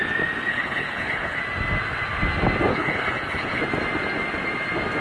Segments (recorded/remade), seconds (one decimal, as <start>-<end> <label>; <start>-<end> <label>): 0.0-0.5 recorded; 0.5-1.4 remade; 1.4-2.7 recorded; 2.7-3.6 remade; 3.6-5.0 recorded